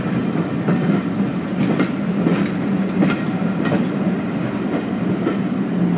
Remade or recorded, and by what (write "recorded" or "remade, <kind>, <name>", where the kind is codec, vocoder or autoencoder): recorded